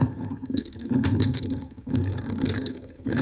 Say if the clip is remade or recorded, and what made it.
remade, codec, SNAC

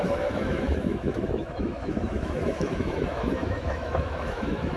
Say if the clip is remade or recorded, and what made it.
remade, autoencoder, DAC-VAE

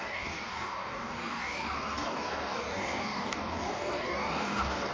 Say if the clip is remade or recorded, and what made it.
remade, codec, DAC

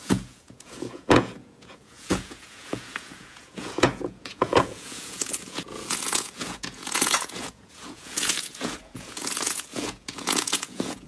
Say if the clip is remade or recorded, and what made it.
remade, vocoder, Vocos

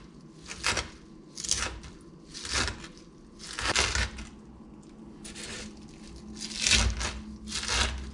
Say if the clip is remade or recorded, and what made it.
recorded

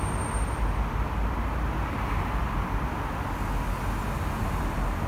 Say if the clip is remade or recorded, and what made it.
recorded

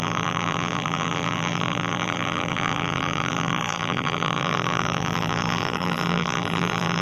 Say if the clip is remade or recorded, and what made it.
remade, vocoder, BigVGAN v2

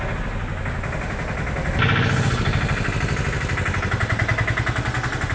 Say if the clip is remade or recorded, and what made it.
recorded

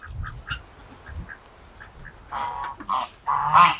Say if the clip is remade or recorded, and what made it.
recorded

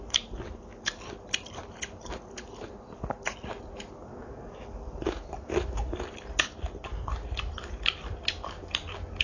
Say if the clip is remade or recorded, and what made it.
recorded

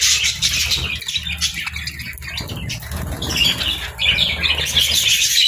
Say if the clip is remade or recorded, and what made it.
recorded